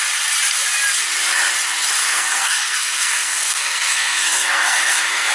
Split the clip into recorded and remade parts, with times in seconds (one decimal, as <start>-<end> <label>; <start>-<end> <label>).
0.0-2.0 recorded; 2.0-5.3 remade